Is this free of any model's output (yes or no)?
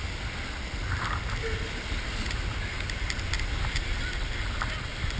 yes